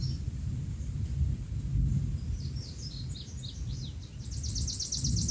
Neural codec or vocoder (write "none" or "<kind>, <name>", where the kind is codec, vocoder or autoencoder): none